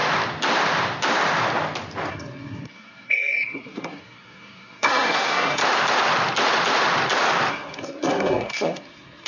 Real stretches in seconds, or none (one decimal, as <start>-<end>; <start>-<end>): 0.0-2.1; 5.6-7.5